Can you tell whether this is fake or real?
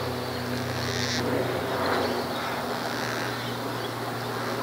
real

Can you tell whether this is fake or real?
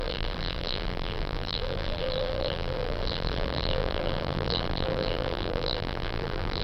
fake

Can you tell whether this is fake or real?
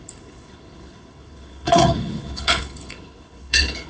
fake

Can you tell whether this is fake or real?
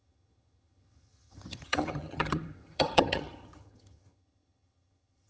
fake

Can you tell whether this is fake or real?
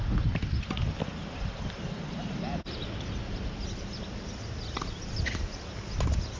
real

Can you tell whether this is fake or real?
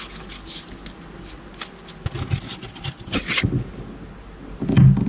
real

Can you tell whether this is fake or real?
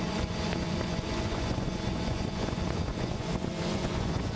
fake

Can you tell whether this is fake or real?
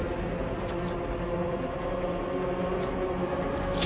real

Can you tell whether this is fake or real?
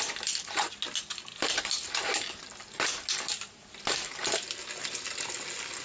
real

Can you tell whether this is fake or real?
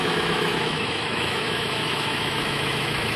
fake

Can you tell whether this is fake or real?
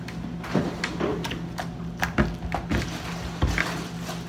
real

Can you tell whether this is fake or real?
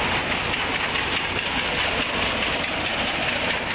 real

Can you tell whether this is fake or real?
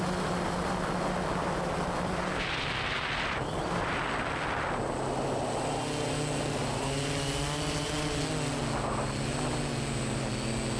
real